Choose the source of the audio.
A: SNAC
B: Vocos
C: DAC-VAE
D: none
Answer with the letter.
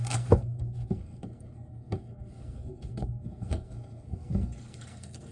A